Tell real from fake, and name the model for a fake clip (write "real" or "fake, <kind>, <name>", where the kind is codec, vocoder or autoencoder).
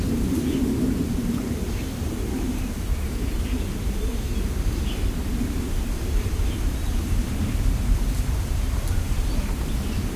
fake, vocoder, BigVGAN v2